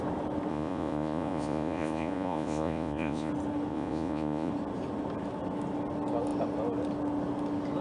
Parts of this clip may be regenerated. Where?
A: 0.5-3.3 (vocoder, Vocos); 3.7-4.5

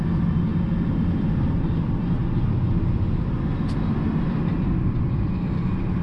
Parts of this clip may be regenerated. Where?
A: none